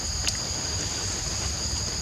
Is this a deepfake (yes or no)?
no